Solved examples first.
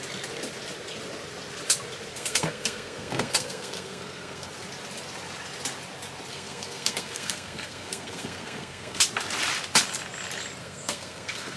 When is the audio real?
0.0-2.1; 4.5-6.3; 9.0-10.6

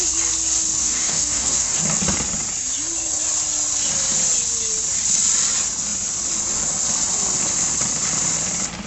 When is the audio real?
0.0-0.8; 1.8-8.9

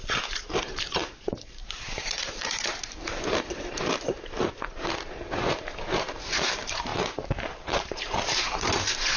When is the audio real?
none

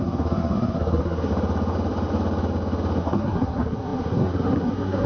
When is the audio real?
1.3-3.0